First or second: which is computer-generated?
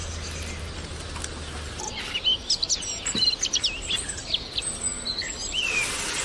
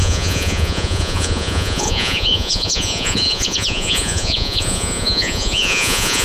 second